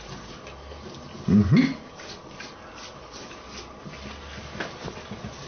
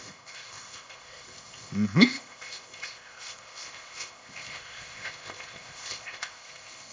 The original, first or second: first